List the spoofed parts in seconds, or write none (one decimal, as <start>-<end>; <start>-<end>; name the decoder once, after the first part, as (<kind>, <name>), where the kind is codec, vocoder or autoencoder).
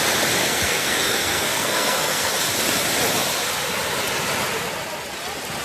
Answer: 0.4-2.3 (codec, SNAC)